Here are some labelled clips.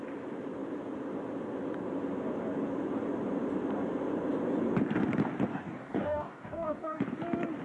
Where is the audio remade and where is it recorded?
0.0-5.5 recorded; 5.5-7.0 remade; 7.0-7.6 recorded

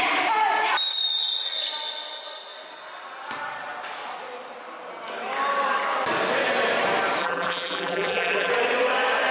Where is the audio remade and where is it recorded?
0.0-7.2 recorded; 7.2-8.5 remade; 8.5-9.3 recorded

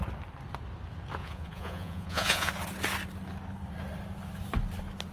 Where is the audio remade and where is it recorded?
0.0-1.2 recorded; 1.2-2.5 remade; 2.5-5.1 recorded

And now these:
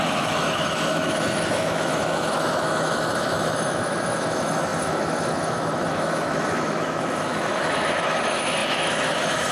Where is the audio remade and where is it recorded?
0.0-9.5 remade

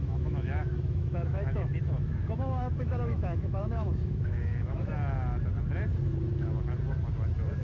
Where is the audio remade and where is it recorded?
0.0-4.9 remade; 4.9-7.6 recorded

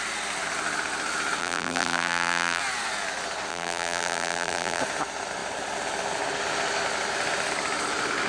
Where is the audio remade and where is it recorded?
0.0-1.4 recorded; 1.4-2.6 remade; 2.6-3.5 recorded; 3.5-4.8 remade; 4.8-8.3 recorded

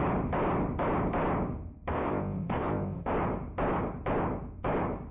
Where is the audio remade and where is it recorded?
0.0-1.9 recorded; 1.9-3.1 remade; 3.1-5.1 recorded